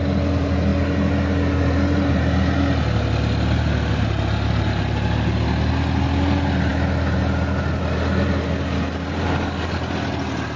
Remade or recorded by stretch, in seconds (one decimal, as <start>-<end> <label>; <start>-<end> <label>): 0.0-10.6 recorded